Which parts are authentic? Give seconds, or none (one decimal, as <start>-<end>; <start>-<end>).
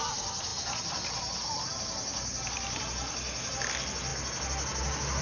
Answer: 0.0-5.2